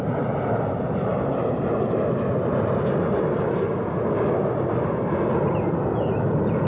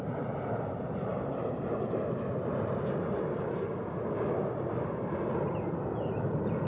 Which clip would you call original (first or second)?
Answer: first